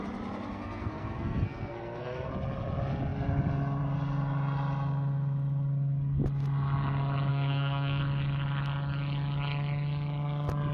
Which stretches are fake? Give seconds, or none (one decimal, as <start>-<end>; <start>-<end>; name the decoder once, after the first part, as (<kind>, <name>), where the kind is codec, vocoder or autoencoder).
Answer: 0.5-2.3 (codec, SNAC); 7.3-8.0